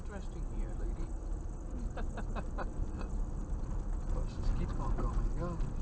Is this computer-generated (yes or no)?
no